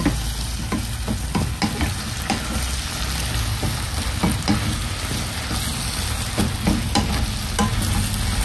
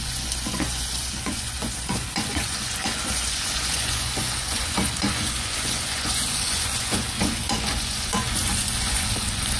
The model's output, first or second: second